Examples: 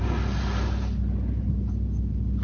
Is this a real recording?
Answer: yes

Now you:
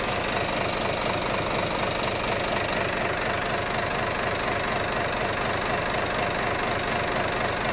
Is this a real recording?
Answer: yes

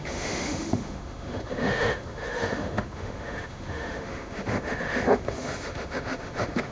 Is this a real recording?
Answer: no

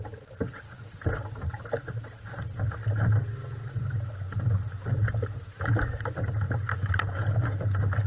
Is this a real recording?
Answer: yes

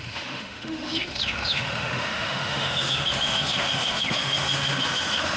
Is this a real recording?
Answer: no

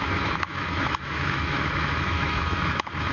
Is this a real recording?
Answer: no